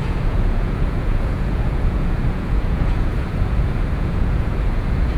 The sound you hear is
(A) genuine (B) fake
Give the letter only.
B